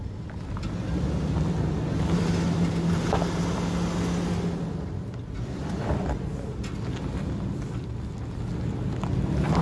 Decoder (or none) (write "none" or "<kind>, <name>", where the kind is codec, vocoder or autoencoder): none